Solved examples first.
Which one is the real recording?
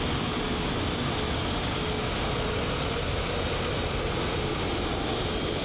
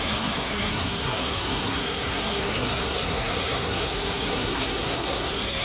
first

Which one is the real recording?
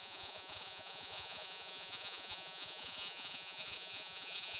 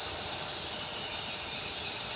second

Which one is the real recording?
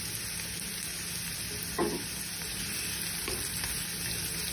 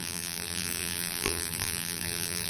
first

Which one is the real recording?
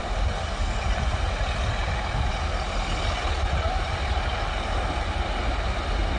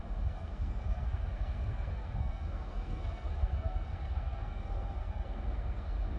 first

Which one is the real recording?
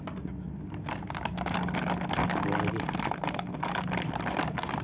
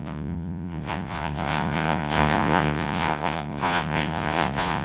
first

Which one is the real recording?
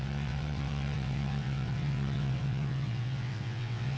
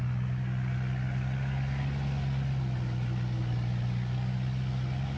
second